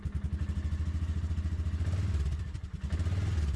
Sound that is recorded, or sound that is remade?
recorded